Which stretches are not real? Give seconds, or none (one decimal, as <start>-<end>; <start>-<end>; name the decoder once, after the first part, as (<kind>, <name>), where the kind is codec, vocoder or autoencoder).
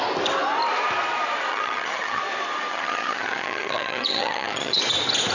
1.5-2.2 (vocoder, HiFi-GAN); 2.7-4.8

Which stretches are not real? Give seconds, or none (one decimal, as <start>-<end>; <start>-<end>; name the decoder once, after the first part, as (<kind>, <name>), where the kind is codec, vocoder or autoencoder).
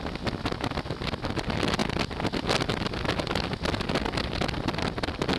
none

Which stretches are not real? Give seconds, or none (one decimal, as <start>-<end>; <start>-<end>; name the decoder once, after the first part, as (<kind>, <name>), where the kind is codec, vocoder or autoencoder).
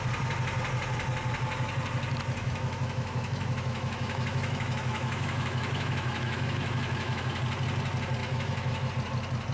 2.4-7.4 (autoencoder, DAC-VAE); 8.2-8.9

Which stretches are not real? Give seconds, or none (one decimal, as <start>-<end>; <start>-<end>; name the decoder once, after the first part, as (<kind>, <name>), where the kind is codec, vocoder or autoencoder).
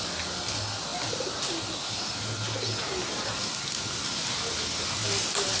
none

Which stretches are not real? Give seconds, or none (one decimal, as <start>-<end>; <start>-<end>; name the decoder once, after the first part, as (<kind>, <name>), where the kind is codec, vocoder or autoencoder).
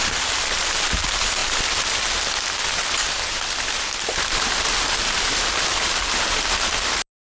none